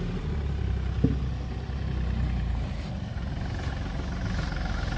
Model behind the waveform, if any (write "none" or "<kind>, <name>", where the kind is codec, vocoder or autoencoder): none